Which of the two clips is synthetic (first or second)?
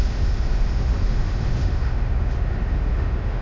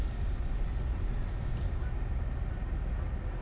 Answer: first